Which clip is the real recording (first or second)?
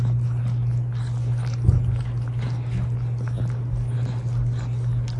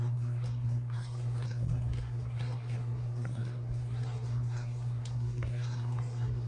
first